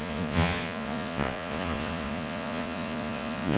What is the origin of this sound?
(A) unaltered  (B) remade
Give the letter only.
B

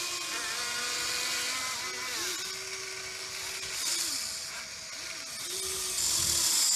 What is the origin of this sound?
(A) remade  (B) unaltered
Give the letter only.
B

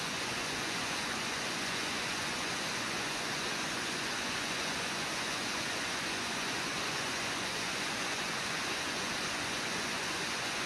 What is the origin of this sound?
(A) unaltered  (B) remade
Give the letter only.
B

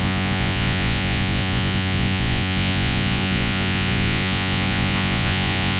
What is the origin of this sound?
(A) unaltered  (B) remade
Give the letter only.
B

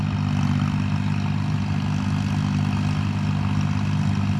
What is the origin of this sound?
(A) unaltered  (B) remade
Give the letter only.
A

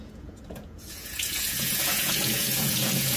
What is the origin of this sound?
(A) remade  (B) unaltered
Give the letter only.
A